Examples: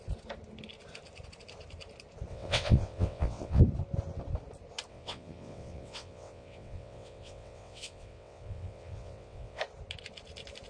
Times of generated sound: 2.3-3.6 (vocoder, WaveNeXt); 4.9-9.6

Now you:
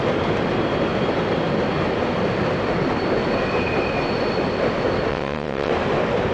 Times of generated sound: 5.1-5.7 (vocoder, WaveNeXt)